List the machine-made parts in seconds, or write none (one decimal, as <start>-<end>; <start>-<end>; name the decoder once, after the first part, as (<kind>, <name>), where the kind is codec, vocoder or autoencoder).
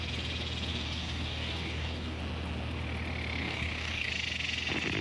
0.7-2.2 (codec, DAC); 3.4-4.1